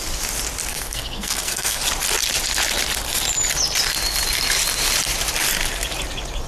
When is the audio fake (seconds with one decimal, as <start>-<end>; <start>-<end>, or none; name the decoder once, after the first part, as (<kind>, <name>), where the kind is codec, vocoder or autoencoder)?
0.7-1.8 (codec, SNAC)

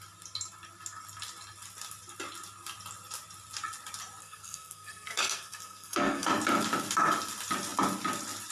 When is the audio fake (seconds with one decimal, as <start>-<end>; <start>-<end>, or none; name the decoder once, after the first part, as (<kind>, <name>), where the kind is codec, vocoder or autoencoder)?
4.2-6.3 (codec, SNAC)

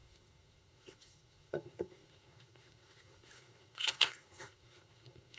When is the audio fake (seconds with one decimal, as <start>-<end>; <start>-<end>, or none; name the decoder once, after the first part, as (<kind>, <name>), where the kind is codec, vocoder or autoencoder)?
0.0-5.4 (codec, SNAC)

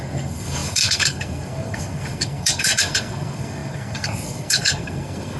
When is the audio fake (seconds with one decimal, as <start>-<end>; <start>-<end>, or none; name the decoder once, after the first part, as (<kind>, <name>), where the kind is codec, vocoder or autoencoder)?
0.0-5.4 (codec, SNAC)

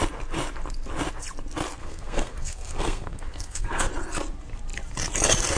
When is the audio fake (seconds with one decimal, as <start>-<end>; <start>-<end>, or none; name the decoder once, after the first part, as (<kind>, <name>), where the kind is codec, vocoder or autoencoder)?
1.8-3.9 (codec, SNAC)

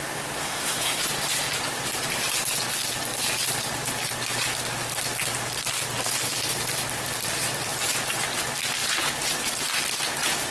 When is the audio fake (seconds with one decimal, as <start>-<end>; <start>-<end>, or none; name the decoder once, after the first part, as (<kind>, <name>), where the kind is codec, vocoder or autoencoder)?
0.4-1.0 (codec, SNAC)

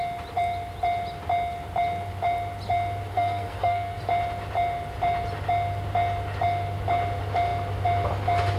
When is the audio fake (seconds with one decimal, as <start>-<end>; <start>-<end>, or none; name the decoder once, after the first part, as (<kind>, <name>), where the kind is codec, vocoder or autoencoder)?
3.1-4.0 (codec, SNAC)